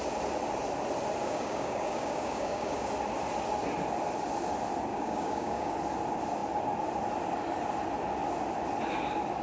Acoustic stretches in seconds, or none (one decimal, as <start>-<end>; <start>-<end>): 0.0-1.2; 2.9-4.9; 5.7-9.4